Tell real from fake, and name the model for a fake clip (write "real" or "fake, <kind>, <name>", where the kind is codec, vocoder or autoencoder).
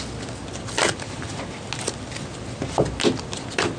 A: real